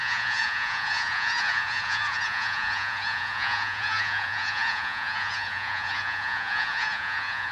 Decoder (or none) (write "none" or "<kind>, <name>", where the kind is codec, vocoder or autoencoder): vocoder, Vocos